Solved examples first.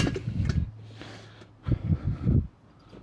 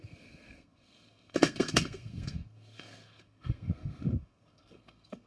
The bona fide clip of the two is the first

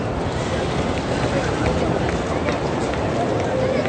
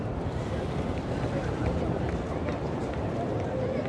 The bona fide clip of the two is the first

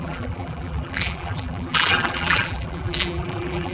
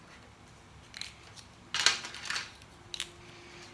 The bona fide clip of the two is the second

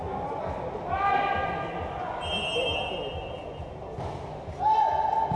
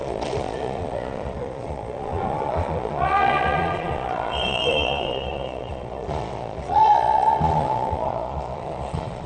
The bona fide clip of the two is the first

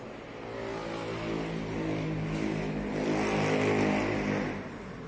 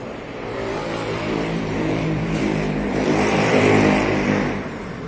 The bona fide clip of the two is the first